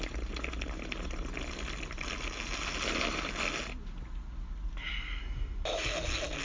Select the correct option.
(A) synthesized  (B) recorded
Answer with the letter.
B